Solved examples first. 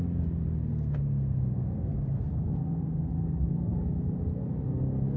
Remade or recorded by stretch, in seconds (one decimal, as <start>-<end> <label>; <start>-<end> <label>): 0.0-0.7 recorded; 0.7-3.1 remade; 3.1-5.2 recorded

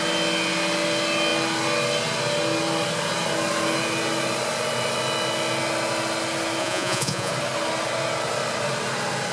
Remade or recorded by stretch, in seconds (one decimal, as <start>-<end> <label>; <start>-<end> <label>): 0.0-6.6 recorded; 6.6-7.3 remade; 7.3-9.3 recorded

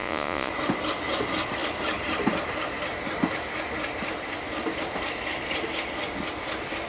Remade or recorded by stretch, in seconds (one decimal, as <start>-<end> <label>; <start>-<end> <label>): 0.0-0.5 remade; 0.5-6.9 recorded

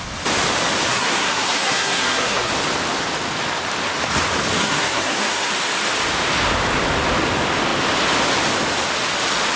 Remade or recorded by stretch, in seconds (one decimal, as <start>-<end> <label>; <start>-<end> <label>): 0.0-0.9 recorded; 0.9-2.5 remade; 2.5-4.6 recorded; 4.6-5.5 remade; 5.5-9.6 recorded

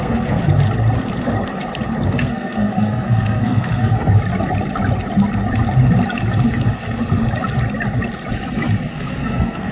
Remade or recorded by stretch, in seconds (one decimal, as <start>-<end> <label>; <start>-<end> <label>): 0.0-0.4 remade; 0.4-2.1 recorded; 2.1-4.1 remade; 4.1-8.9 recorded; 8.9-9.7 remade

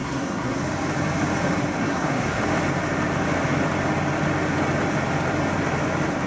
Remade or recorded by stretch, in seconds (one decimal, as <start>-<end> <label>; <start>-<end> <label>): 0.0-0.6 remade; 0.6-1.8 recorded; 1.8-2.4 remade; 2.4-6.3 recorded

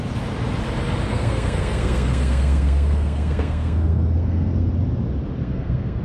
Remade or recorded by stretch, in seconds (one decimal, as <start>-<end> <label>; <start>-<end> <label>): 0.0-1.1 recorded; 1.1-4.7 remade; 4.7-5.4 recorded; 5.4-6.0 remade

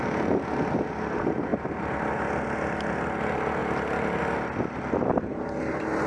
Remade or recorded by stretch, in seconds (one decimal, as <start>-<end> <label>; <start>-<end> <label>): 0.0-6.1 recorded